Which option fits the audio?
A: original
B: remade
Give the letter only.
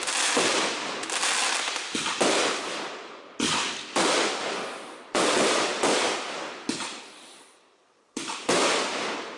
A